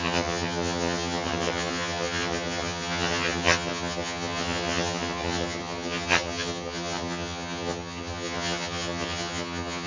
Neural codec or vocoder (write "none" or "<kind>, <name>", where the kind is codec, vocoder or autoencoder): vocoder, HiFi-GAN